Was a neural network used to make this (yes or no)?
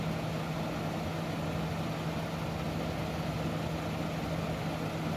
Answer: no